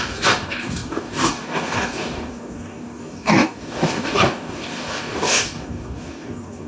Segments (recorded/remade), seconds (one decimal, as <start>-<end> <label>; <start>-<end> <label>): 0.0-6.7 remade